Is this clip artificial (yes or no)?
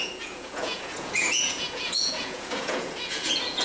yes